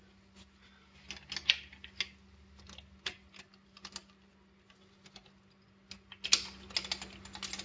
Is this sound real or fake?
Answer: real